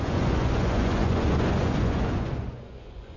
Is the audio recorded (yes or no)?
no